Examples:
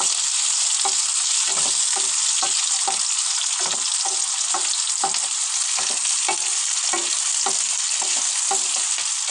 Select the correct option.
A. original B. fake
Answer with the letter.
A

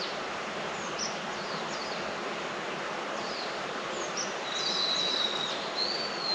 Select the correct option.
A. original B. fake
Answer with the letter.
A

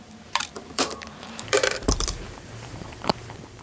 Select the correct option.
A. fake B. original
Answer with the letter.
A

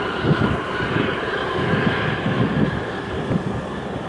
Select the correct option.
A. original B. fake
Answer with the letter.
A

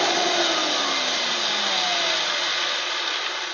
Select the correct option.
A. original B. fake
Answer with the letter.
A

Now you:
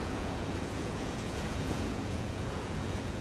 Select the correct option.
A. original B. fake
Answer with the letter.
B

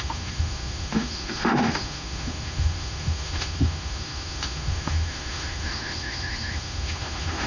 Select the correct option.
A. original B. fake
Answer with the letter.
B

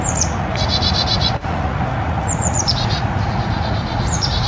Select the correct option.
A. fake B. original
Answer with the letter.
A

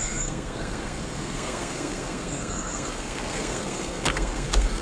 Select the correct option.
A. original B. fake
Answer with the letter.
B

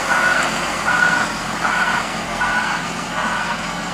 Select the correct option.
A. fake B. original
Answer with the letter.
A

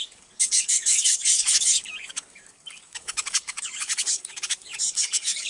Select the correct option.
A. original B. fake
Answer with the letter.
B